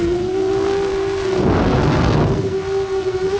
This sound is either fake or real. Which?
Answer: fake